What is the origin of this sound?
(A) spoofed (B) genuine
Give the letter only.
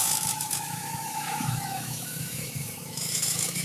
A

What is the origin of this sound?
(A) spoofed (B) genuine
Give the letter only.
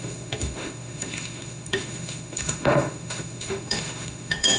A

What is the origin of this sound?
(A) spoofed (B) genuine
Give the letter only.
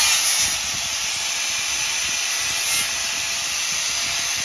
B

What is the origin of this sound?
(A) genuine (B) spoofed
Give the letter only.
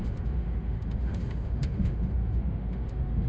B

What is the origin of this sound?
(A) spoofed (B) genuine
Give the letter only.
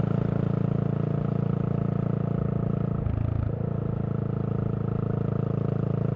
B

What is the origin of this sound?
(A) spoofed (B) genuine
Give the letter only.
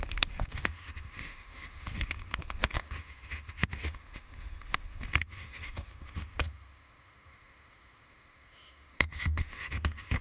A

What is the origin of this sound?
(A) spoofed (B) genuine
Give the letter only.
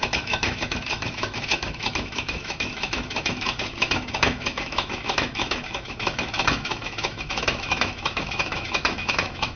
A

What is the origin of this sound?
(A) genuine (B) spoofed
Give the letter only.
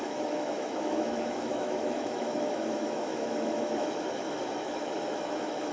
B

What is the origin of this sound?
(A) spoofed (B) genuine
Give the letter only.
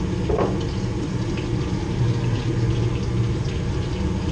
B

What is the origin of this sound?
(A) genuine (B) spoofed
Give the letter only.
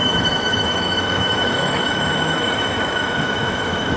B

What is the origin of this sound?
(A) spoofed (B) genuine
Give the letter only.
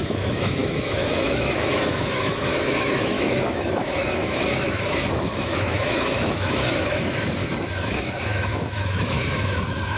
A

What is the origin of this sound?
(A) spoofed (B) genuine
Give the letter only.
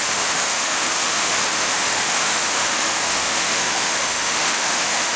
A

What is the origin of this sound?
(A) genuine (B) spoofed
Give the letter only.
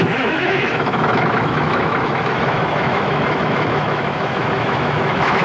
B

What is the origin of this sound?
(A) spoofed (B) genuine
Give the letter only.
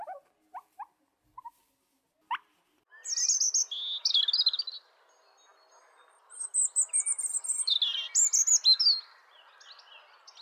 B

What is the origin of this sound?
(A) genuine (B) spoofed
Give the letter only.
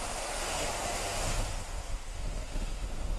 B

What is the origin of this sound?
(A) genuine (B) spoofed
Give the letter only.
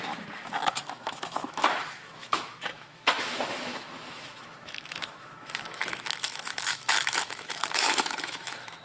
B